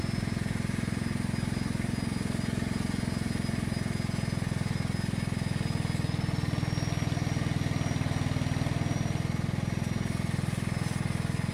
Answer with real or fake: real